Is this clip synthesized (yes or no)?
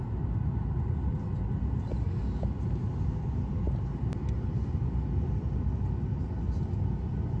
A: no